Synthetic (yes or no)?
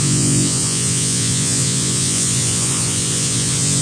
yes